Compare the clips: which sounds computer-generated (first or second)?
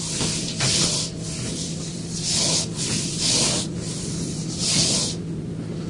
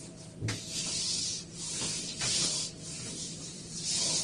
second